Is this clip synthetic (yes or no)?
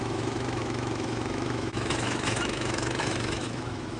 yes